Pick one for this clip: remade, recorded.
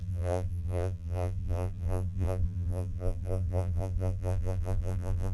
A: remade